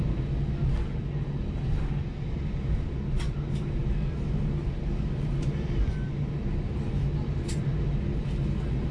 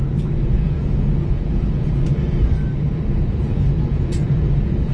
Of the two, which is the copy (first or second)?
second